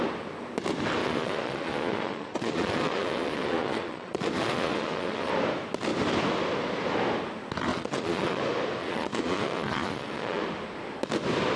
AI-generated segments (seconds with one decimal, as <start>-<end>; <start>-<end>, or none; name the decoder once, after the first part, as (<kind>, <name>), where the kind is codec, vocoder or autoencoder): 1.0-5.3 (vocoder, Vocos); 7.7-8.4; 8.8-10.4